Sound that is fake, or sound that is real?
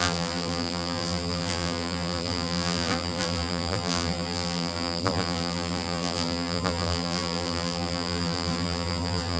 fake